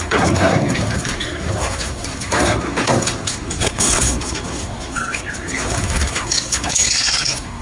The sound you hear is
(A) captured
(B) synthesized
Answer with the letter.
B